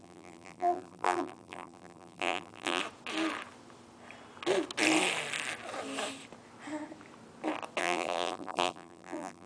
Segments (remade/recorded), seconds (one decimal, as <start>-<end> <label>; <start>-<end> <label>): 0.0-2.8 remade; 2.8-7.8 recorded; 7.8-9.5 remade